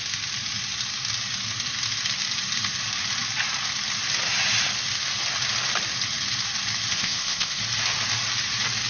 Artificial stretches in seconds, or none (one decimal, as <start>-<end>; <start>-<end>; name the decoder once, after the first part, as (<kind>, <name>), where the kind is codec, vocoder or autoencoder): 6.9-7.6 (codec, ZipCodec)